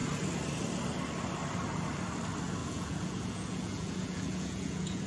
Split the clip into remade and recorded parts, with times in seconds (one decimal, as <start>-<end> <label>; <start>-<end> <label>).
0.0-2.6 recorded; 2.6-5.1 remade

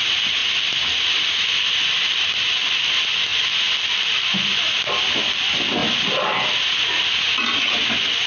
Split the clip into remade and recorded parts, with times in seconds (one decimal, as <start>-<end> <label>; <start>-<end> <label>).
0.0-8.3 recorded

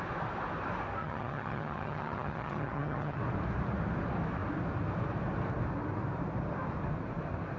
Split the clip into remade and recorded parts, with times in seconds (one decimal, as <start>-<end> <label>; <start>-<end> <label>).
0.0-1.0 recorded; 1.0-3.2 remade; 3.2-7.6 recorded

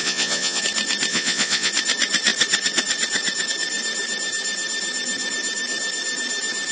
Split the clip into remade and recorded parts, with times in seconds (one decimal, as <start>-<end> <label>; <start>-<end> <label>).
0.0-0.6 remade; 0.6-1.1 recorded; 1.1-1.7 remade; 1.7-6.7 recorded

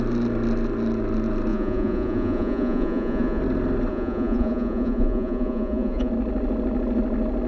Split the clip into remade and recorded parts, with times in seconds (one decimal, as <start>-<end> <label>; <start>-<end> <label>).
0.0-1.5 recorded; 1.5-3.4 remade; 3.4-3.9 recorded; 3.9-6.1 remade; 6.1-7.5 recorded

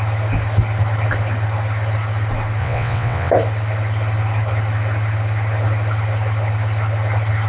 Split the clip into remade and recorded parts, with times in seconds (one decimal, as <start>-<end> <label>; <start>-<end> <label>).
0.0-2.6 recorded; 2.6-3.3 remade; 3.3-7.5 recorded

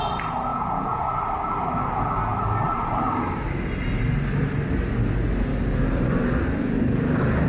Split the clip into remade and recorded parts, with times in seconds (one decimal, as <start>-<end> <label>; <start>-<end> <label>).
0.0-0.5 recorded; 0.5-1.0 remade; 1.0-7.5 recorded